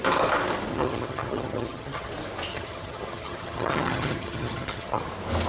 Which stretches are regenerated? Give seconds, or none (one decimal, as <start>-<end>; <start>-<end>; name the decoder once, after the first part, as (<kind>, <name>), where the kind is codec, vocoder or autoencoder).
0.7-2.1 (vocoder, HiFi-GAN); 2.5-5.1